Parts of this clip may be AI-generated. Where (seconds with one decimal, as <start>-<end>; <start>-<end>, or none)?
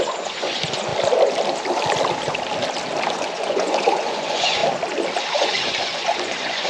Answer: 0.0-0.9; 3.1-4.6; 5.3-6.7